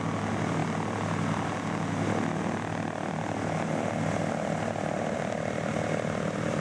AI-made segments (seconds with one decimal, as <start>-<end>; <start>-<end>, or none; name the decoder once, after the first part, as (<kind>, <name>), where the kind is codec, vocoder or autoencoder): none